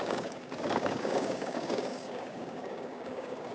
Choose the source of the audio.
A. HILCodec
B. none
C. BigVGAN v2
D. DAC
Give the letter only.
D